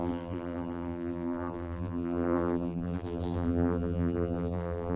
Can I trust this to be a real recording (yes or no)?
no